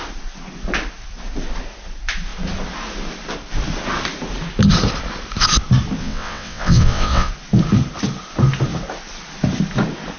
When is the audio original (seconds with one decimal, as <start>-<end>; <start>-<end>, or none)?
0.0-6.0; 7.3-10.2